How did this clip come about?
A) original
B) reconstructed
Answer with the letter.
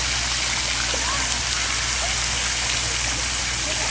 A